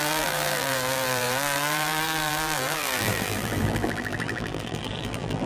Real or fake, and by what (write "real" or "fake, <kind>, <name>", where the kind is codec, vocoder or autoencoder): fake, vocoder, BigVGAN v2